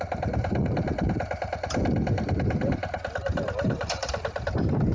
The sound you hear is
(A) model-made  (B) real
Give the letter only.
A